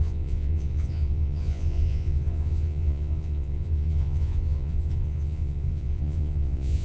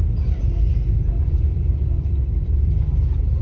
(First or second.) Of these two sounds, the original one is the second